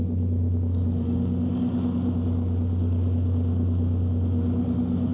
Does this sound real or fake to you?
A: real